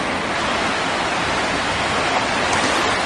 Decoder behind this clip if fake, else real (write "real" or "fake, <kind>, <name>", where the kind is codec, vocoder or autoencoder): real